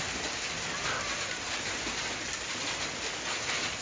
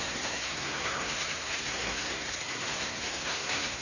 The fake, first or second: second